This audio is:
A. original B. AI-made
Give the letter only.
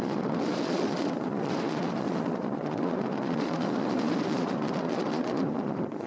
B